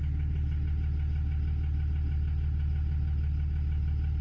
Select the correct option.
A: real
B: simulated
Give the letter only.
A